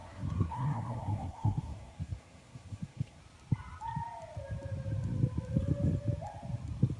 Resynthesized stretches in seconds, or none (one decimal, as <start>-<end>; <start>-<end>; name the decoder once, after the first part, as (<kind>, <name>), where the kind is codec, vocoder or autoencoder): 0.0-3.2 (codec, SNAC)